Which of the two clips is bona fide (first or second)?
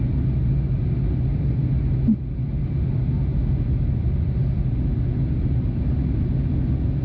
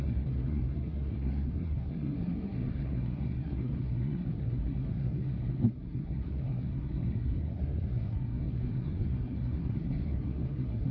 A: first